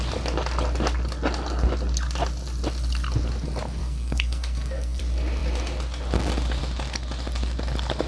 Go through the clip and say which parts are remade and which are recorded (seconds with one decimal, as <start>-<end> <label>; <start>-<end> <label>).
0.0-3.8 recorded; 3.8-5.0 remade; 5.0-8.1 recorded